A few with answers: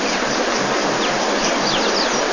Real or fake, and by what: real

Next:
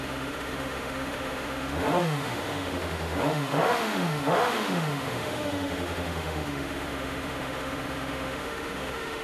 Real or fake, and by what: fake, autoencoder, DAC-VAE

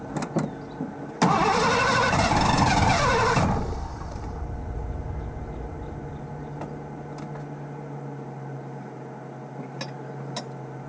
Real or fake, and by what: real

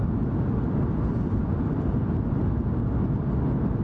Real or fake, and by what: real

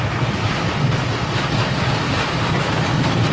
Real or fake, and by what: real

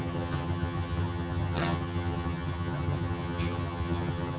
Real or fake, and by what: fake, vocoder, HiFi-GAN